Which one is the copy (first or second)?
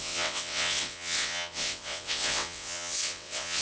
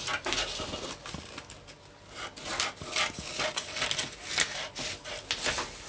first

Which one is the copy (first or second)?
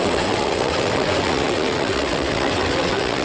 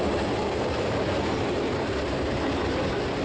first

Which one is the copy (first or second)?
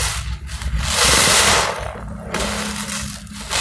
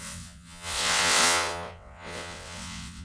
second